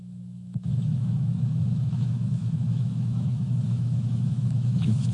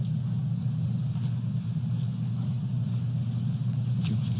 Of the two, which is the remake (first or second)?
first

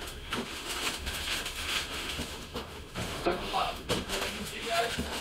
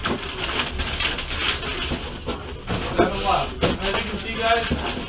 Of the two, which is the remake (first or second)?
first